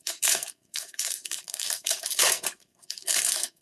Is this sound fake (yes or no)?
yes